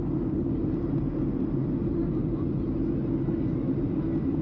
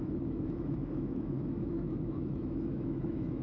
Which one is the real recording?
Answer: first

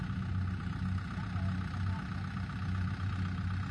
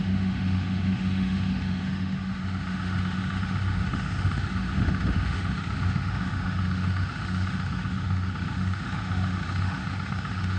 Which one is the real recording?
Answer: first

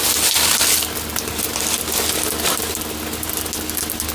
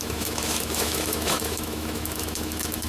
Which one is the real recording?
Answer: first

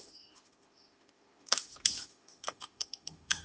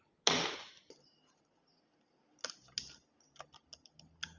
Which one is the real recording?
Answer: second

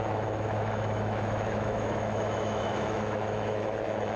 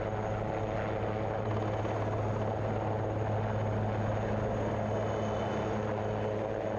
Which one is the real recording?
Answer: second